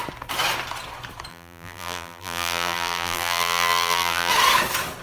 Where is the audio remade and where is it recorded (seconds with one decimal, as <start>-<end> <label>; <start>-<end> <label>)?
0.0-1.3 recorded; 1.3-4.3 remade; 4.3-5.0 recorded